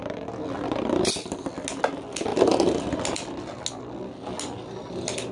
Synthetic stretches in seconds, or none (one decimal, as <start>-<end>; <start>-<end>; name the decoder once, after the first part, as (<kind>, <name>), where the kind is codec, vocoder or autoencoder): none